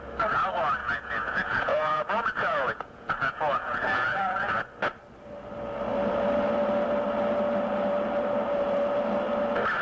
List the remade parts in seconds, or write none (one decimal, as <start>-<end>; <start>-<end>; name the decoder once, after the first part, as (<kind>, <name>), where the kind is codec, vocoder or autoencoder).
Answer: 0.8-4.6 (vocoder, Vocos)